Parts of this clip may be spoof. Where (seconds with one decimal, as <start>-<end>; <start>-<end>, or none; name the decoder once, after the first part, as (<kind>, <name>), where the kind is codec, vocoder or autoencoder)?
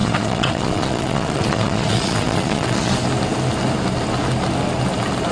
0.0-2.9 (vocoder, Vocos)